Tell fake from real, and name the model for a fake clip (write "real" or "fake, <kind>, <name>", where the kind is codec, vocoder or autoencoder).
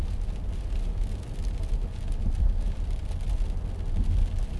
real